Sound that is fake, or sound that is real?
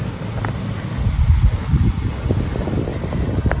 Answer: real